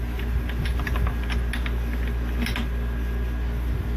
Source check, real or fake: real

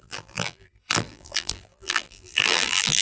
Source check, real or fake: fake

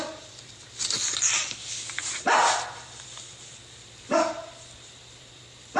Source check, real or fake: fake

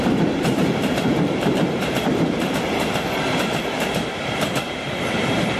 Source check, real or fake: fake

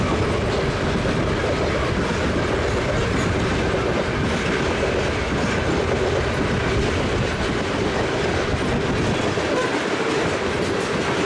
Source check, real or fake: real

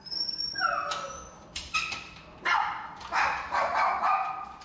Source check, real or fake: fake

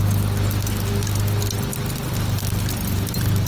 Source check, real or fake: real